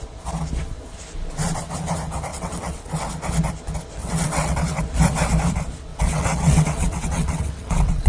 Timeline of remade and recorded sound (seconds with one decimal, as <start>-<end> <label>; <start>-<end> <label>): 0.0-2.3 recorded; 2.3-3.1 remade; 3.1-4.0 recorded; 4.0-4.8 remade; 4.8-5.9 recorded; 5.9-8.1 remade